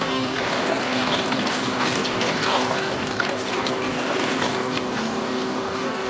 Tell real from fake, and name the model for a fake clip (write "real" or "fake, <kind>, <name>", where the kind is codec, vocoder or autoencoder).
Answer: fake, codec, DAC